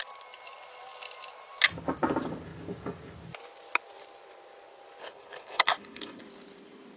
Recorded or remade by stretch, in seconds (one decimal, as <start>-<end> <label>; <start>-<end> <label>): 0.0-5.0 recorded; 5.0-6.2 remade; 6.2-7.0 recorded